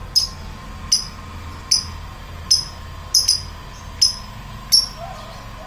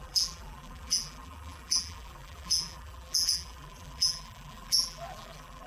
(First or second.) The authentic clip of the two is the first